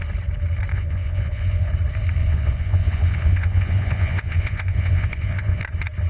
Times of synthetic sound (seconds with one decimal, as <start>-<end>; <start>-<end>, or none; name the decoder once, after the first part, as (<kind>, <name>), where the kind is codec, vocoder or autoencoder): 0.7-1.7 (vocoder, Vocos); 2.2-5.6